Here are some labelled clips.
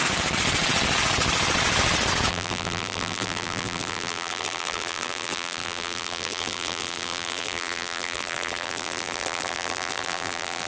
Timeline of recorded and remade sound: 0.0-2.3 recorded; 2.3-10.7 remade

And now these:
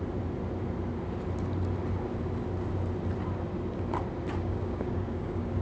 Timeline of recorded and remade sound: 0.0-4.4 recorded; 4.4-5.6 remade

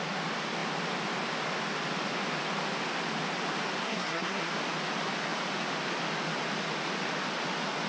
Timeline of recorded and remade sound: 0.0-3.8 recorded; 3.8-4.5 remade; 4.5-7.9 recorded

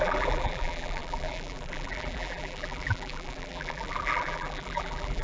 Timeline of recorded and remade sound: 0.0-5.2 remade

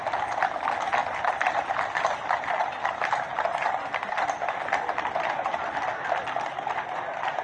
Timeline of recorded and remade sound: 0.0-7.4 recorded

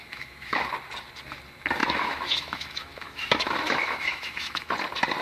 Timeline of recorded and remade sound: 0.0-0.7 remade; 0.7-1.8 recorded; 1.8-4.7 remade; 4.7-5.2 recorded